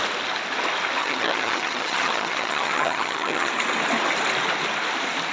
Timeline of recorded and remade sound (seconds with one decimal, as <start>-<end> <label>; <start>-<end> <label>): 0.0-1.0 recorded; 1.0-3.5 remade; 3.5-5.3 recorded